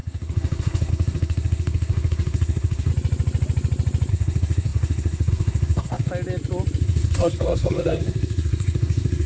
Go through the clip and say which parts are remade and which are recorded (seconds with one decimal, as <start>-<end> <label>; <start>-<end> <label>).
0.0-2.9 remade; 2.9-4.1 recorded; 4.1-6.1 remade; 6.1-6.8 recorded; 6.8-9.3 remade